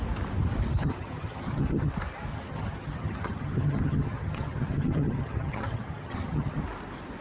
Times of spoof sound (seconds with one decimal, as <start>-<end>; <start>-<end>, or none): 0.8-1.9; 2.3-6.6